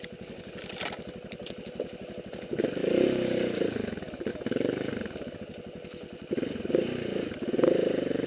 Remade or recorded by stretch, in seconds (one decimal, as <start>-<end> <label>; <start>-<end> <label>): 0.0-2.8 recorded; 2.8-4.3 remade; 4.3-8.3 recorded